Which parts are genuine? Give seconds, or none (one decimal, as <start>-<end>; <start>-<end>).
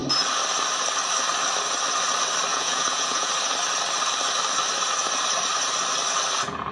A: 0.0-2.5; 3.3-6.7